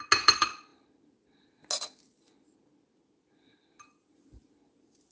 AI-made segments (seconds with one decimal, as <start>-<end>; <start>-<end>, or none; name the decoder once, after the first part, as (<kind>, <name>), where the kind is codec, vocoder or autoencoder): none